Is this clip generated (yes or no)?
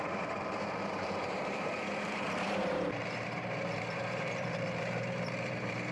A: yes